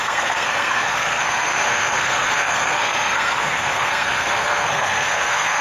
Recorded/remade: remade